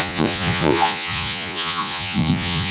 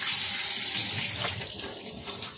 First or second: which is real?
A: second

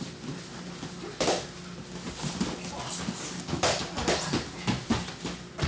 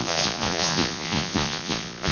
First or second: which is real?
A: first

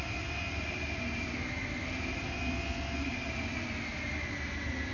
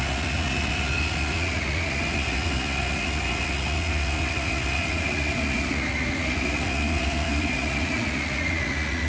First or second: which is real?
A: first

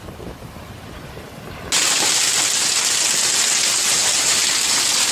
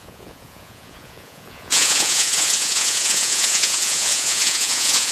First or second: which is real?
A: first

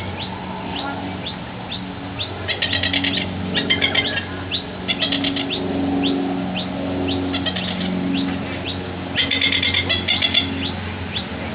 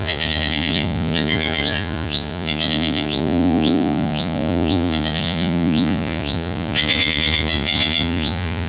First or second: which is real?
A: first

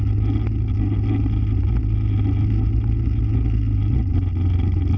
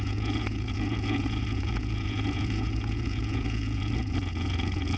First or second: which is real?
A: first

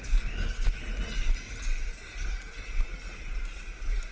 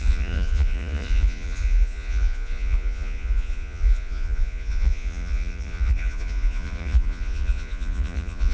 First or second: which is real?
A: first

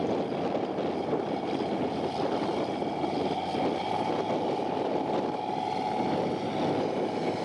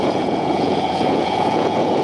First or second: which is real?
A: first